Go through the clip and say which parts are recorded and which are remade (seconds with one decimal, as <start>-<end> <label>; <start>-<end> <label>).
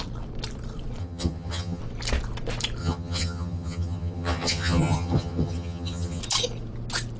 0.0-1.0 recorded; 1.0-1.8 remade; 1.8-2.8 recorded; 2.8-6.2 remade; 6.2-7.2 recorded